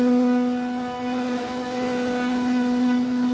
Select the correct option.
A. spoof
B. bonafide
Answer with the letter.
B